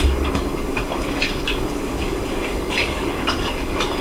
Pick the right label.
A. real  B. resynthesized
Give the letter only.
B